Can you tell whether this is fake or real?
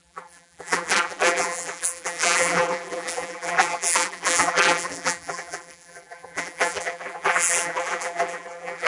fake